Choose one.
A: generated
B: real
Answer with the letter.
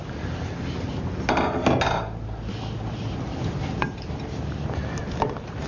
B